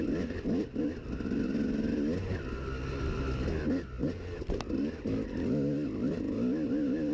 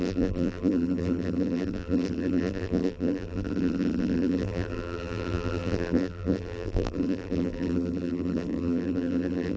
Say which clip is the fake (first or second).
second